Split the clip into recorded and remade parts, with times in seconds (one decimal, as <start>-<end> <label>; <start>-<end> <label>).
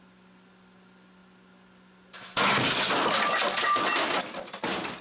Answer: 0.0-5.0 recorded